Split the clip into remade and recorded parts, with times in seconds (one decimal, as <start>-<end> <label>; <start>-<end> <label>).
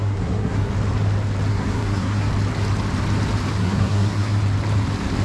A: 0.0-0.7 remade; 0.7-1.5 recorded; 1.5-2.3 remade; 2.3-3.6 recorded; 3.6-4.4 remade; 4.4-5.2 recorded